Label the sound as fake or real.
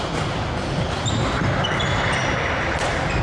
real